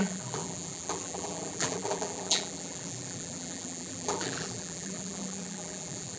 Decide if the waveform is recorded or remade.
remade